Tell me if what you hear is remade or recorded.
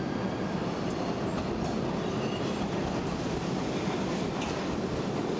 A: recorded